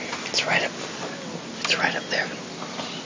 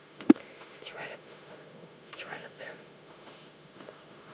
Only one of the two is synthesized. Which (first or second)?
second